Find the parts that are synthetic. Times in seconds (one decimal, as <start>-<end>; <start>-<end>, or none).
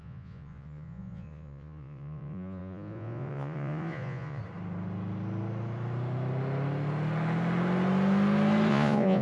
0.0-4.4; 8.7-9.2